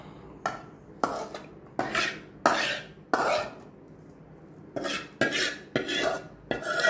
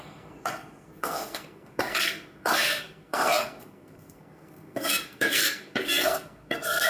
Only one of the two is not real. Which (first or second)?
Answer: second